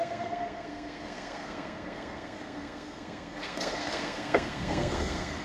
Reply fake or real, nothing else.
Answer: fake